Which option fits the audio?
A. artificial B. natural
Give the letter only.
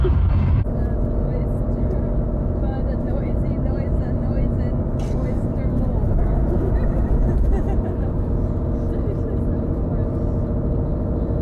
B